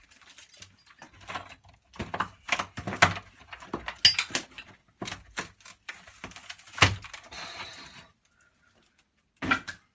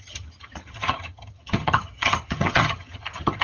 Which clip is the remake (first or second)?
second